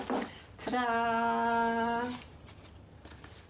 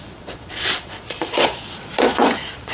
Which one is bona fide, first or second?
first